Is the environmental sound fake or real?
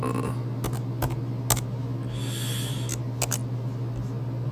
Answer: real